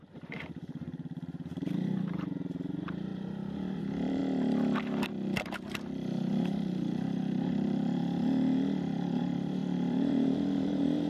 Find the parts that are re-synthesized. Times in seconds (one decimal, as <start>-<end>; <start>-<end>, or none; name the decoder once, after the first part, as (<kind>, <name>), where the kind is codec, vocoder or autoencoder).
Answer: 0.0-4.2 (vocoder, BigVGAN v2); 5.1-8.0; 9.2-11.1